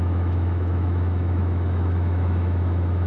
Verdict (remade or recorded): remade